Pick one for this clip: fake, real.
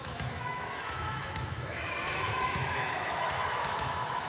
fake